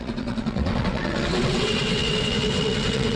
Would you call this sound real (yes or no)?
no